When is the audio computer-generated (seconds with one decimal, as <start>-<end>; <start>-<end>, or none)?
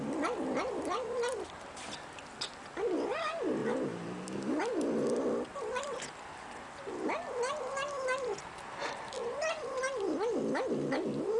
none